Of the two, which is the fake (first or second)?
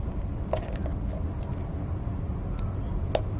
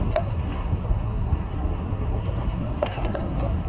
second